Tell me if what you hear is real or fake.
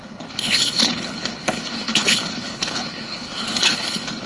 fake